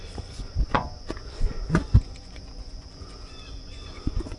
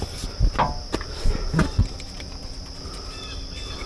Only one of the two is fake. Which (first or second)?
first